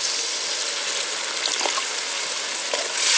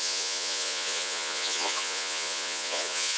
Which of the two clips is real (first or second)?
first